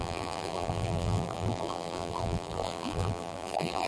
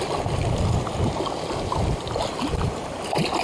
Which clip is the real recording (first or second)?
second